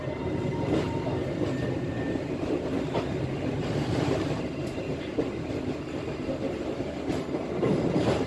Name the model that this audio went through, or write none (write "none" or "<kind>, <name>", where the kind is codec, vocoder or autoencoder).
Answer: vocoder, BigVGAN v2